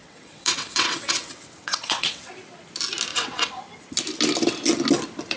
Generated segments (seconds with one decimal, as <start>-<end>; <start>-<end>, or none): 0.0-2.3; 3.1-3.6